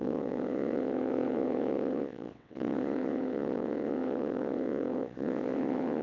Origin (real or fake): fake